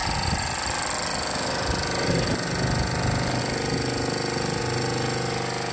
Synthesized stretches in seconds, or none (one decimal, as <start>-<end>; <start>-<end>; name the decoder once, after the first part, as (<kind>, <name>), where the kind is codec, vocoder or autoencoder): none